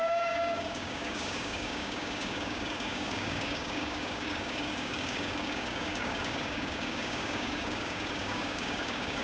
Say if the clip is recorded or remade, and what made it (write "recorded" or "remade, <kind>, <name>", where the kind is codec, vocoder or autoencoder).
remade, codec, DAC